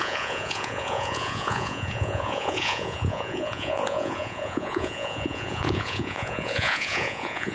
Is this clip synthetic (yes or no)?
yes